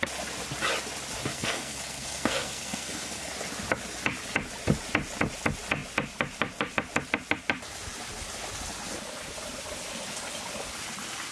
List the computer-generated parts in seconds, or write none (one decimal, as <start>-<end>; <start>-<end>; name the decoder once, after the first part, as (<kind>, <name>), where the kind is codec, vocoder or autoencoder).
1.3-3.3 (codec, SNAC)